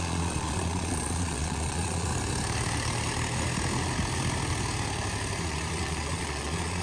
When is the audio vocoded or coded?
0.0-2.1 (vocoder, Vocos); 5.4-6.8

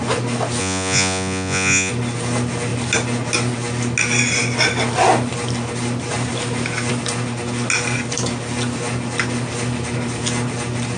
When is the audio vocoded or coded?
0.6-1.9 (vocoder, Vocos)

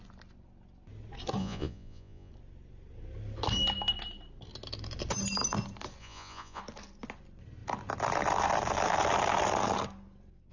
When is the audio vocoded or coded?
1.4-2.3 (vocoder, Vocos); 6.0-6.6

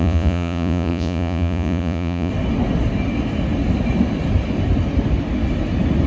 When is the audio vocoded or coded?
0.0-2.3 (vocoder, Vocos)

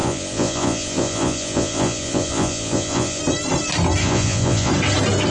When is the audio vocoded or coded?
0.0-3.2 (vocoder, Vocos); 4.0-4.7

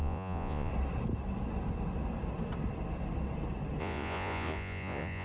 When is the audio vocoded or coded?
0.0-0.7 (vocoder, Vocos); 3.8-5.2

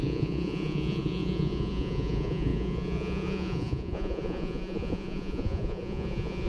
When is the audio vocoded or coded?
0.0-6.5 (vocoder, Vocos)